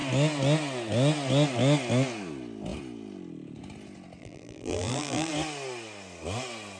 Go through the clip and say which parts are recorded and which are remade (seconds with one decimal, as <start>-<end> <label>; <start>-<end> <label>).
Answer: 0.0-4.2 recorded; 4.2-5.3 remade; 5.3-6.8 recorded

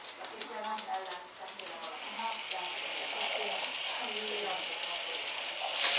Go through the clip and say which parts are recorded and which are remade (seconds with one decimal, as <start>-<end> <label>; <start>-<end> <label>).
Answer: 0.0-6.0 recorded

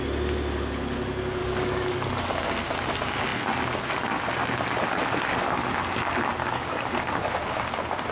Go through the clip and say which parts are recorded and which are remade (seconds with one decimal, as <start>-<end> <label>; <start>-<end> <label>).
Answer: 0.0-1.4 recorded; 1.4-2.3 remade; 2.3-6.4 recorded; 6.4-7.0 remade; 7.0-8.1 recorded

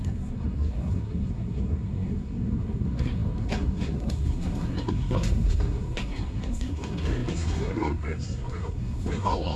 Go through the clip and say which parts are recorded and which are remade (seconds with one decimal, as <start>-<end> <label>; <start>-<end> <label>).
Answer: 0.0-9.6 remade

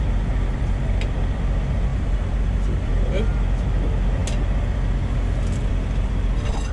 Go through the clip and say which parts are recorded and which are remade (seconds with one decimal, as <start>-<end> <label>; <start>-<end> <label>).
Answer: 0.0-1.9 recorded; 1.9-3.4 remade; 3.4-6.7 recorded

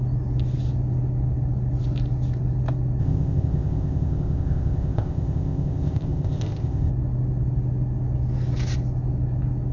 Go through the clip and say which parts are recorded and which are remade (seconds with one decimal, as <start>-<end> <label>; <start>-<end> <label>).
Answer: 0.0-3.0 recorded; 3.0-6.9 remade; 6.9-9.7 recorded